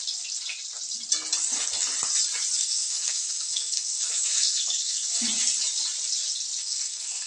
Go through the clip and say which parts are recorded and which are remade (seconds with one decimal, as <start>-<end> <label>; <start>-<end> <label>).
0.0-2.6 recorded; 2.6-5.2 remade; 5.2-6.6 recorded; 6.6-7.3 remade